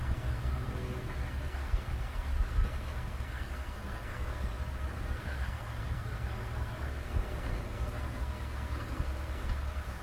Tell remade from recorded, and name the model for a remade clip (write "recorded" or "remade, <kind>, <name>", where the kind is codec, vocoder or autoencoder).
remade, codec, SNAC